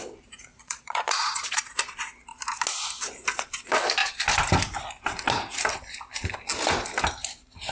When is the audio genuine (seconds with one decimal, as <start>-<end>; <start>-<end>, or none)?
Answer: 0.0-0.5; 1.6-7.7